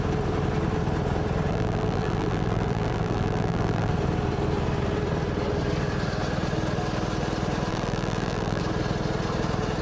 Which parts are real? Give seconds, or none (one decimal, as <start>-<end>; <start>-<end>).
0.0-1.5; 3.9-7.7; 8.6-9.8